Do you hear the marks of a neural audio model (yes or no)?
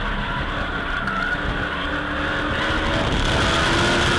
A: no